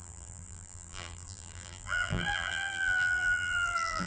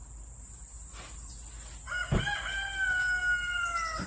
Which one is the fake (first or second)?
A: first